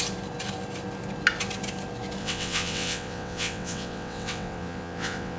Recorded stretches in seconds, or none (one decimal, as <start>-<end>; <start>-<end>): 0.0-2.2